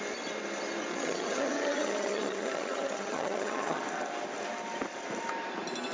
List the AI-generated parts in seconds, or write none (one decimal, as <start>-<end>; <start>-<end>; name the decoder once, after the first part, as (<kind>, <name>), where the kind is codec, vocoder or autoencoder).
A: 0.9-3.8 (vocoder, HiFi-GAN)